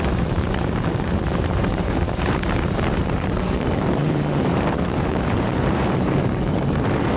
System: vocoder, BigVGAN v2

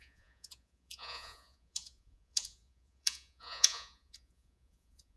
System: vocoder, Vocos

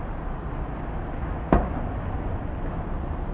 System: none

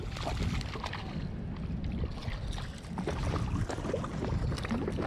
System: none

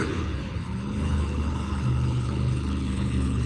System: codec, HILCodec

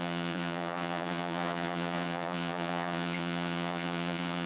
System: vocoder, Vocos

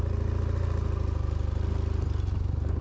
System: none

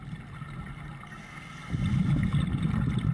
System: none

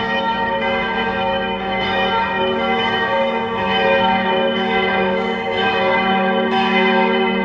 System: codec, DAC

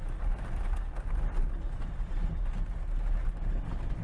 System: none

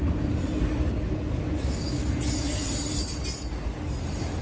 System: none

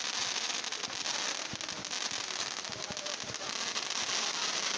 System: vocoder, BigVGAN v2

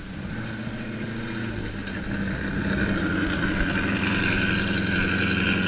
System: none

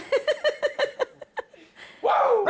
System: none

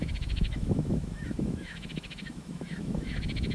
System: autoencoder, DAC-VAE